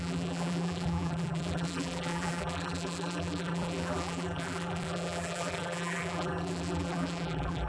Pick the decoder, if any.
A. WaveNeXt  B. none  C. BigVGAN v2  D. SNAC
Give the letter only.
C